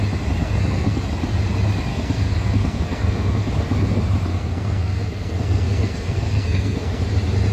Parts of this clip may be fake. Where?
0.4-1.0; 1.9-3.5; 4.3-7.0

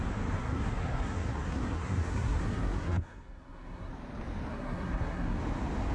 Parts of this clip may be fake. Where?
0.4-3.9; 4.5-5.4